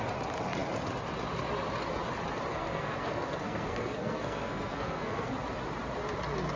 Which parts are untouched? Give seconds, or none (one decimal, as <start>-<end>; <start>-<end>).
0.0-2.5; 5.3-6.6